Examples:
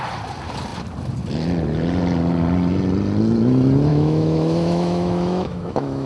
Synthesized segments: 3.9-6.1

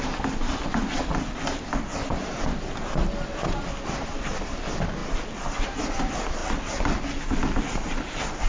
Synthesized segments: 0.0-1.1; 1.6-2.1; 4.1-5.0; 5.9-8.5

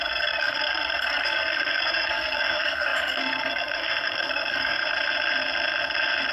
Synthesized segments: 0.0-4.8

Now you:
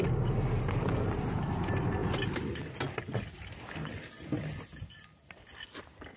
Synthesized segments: none

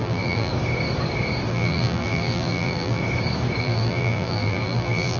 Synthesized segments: 0.0-0.5; 1.5-3.0; 3.6-5.2

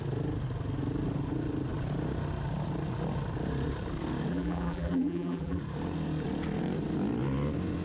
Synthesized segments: 4.3-5.6

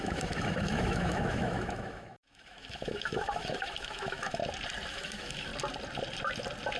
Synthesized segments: 0.0-4.4; 4.9-5.5

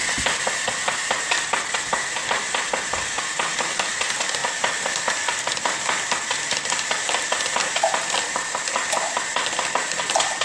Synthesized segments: none